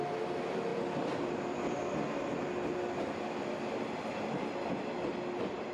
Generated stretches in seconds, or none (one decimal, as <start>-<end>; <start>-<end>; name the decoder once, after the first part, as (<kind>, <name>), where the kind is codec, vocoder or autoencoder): none